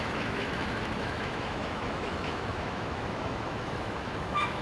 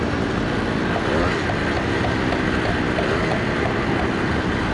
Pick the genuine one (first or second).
second